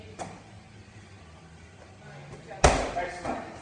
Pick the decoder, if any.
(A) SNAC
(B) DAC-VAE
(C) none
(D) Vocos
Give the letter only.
C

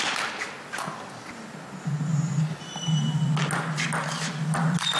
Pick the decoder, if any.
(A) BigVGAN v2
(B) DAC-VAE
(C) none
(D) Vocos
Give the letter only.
C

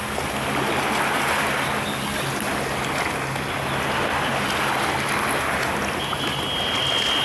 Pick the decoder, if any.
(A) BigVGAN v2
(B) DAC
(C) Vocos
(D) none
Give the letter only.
D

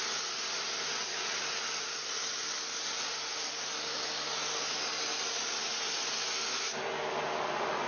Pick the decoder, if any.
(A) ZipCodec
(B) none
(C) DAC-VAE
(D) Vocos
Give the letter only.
B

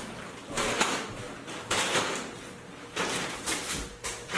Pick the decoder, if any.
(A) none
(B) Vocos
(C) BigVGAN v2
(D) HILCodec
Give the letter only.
A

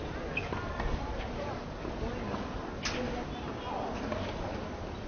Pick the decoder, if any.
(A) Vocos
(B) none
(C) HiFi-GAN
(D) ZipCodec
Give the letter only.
B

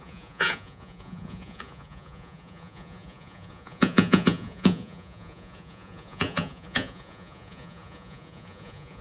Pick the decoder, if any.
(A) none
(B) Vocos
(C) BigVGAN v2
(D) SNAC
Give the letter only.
B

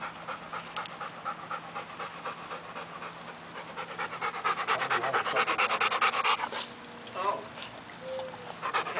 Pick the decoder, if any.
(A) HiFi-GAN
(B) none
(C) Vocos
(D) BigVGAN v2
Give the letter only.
B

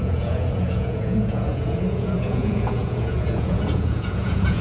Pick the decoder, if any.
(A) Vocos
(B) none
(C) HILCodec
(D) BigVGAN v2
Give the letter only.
A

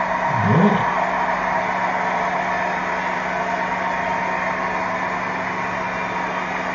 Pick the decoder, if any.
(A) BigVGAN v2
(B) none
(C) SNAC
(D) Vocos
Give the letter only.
B